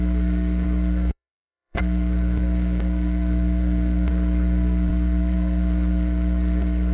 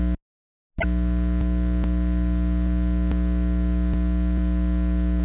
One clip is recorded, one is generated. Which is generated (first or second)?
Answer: first